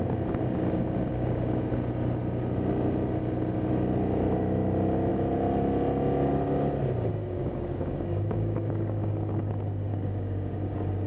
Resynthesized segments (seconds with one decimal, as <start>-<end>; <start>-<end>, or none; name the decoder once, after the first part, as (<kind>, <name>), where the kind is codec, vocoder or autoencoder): 1.1-1.7 (codec, DAC); 7.1-9.5; 9.9-11.1